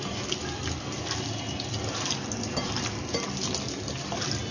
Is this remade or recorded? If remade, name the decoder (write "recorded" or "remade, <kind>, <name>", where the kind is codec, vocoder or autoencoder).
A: recorded